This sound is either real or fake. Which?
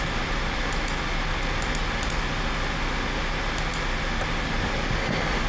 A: real